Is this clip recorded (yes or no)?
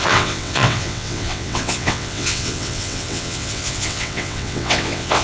no